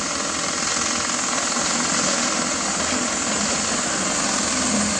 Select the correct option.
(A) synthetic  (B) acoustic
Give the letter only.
B